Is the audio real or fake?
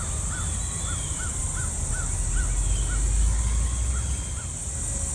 real